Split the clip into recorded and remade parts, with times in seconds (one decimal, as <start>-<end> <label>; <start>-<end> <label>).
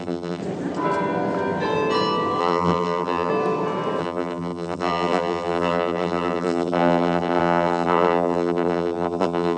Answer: 0.0-0.4 remade; 0.4-2.4 recorded; 2.4-3.3 remade; 3.3-4.0 recorded; 4.0-9.6 remade